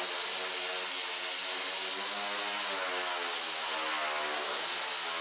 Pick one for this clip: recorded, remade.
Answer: recorded